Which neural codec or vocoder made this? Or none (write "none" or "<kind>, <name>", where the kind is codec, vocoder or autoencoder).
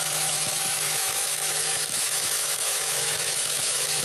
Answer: autoencoder, DAC-VAE